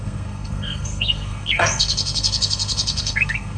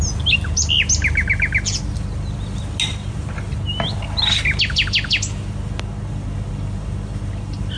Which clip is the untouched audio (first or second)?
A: second